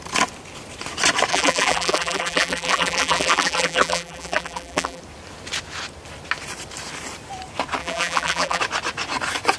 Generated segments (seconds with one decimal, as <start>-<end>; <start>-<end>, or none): 1.3-5.0; 7.8-8.6